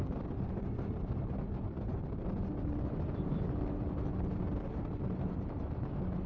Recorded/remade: recorded